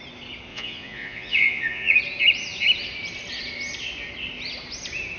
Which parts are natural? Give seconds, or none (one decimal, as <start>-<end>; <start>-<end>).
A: 0.0-0.5; 2.0-5.2